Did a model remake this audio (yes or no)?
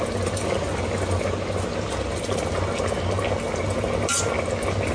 no